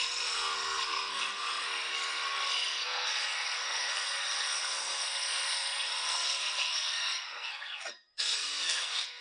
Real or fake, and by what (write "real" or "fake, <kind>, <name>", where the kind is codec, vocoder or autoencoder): fake, codec, SNAC